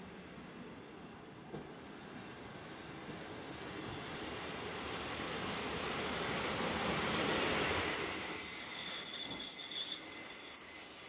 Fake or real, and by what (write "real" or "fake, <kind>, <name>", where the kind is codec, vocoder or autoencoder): real